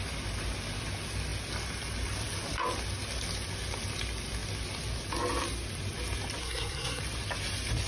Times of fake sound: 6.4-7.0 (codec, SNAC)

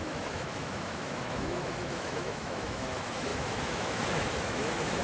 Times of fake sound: 0.0-5.0 (autoencoder, DAC-VAE)

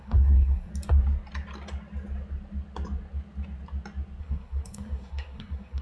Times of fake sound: 0.0-0.7 (codec, SNAC); 4.2-5.8

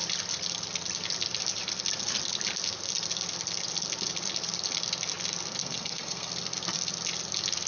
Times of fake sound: 5.6-6.3 (codec, SNAC)

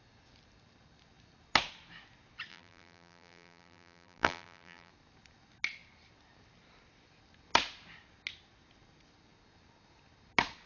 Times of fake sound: 2.5-4.9 (vocoder, BigVGAN v2)

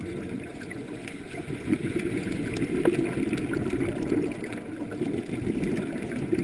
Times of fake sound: 0.0-2.4 (vocoder, Vocos); 6.0-6.4

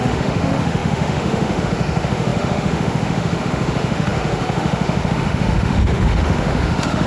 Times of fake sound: 0.0-7.1 (autoencoder, DAC-VAE)